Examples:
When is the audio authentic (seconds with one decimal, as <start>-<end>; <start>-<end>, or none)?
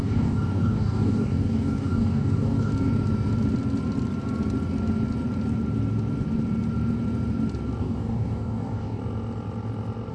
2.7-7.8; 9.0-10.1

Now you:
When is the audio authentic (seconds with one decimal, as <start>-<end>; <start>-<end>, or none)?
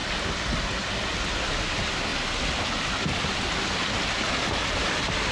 0.0-5.3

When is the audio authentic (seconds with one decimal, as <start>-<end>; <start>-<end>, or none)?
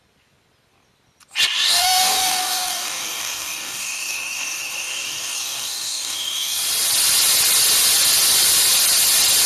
0.0-1.7; 6.6-9.5